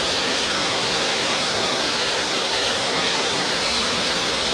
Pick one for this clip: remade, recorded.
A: remade